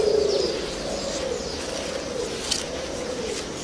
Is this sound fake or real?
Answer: real